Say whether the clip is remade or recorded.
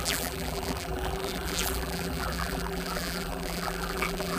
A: remade